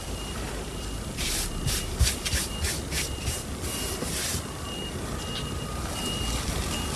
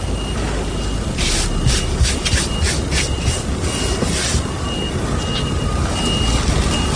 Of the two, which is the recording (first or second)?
second